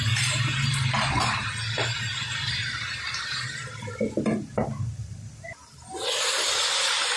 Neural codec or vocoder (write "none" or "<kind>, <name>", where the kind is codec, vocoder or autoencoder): vocoder, BigVGAN v2